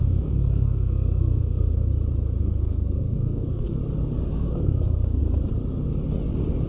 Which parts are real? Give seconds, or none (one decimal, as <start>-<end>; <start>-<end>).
1.9-2.4; 3.8-4.3; 5.2-6.7